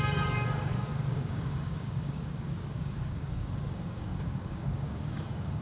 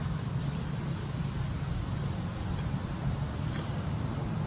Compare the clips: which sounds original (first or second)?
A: second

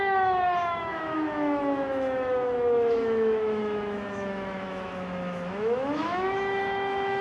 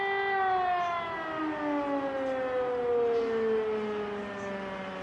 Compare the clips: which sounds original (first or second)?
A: second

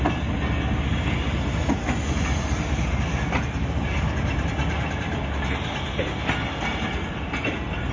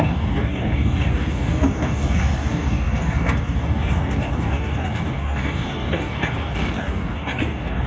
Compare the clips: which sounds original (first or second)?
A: first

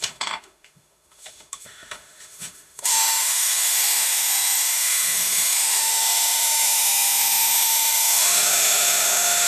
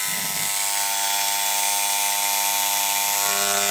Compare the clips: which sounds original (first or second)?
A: second